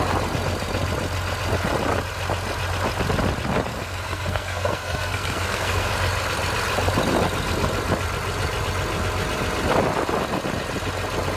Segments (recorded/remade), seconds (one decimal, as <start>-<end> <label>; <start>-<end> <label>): 0.0-3.7 recorded; 3.7-5.9 remade; 5.9-11.4 recorded